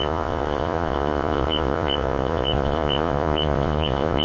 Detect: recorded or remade remade